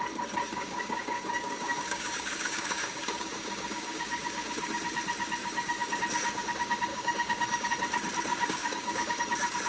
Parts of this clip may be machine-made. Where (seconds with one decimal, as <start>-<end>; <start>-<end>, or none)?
0.5-4.8; 5.4-6.0; 6.9-7.7; 8.3-9.2